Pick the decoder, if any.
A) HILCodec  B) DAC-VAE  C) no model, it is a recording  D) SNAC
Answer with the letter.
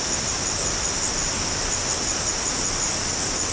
C